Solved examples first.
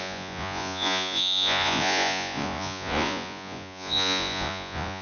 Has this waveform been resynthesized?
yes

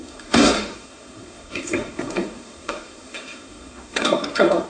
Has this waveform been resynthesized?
yes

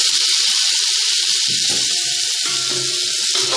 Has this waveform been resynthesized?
no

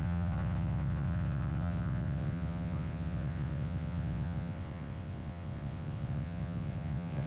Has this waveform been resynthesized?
yes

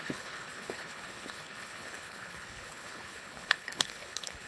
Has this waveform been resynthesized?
yes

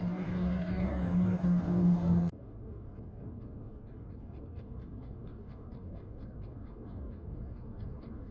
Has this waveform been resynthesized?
yes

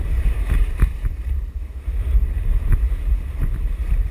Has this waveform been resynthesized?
yes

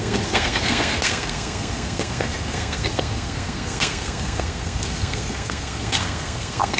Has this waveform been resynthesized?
yes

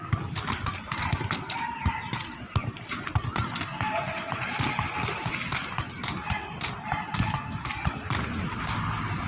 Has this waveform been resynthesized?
no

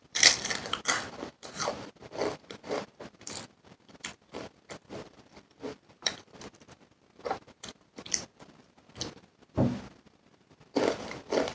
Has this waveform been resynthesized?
yes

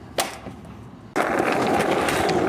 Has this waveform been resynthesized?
no